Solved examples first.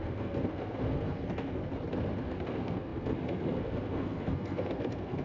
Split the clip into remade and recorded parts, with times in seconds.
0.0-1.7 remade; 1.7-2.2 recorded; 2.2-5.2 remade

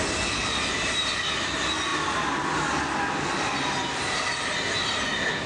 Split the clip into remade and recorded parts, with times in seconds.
0.0-5.5 recorded

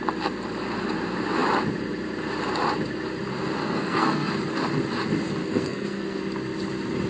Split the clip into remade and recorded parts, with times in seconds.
0.0-3.6 recorded; 3.6-4.3 remade; 4.3-5.4 recorded; 5.4-6.2 remade; 6.2-7.1 recorded

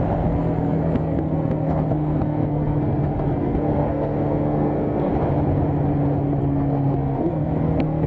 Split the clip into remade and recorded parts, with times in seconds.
0.0-5.1 remade; 5.1-6.4 recorded; 6.4-8.1 remade

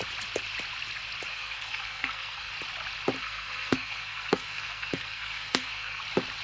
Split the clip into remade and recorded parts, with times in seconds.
0.0-1.3 recorded; 1.3-2.5 remade; 2.5-3.2 recorded; 3.2-6.0 remade; 6.0-6.4 recorded

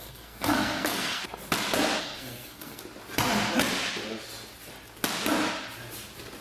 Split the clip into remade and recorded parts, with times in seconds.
0.0-1.2 remade; 1.2-2.0 recorded; 2.0-2.8 remade; 2.8-6.4 recorded

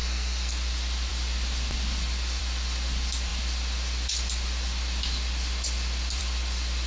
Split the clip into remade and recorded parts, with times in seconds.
0.0-0.5 remade; 0.5-6.9 recorded

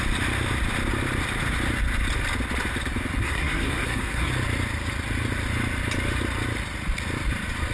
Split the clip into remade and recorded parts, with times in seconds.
0.0-3.2 recorded; 3.2-4.3 remade; 4.3-7.7 recorded